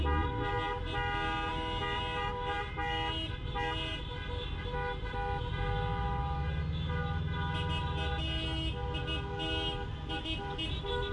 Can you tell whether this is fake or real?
real